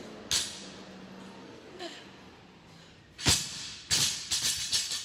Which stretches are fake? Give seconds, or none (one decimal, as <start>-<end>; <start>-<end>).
1.4-2.0